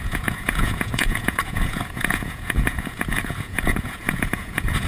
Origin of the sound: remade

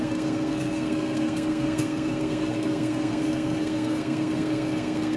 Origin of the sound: remade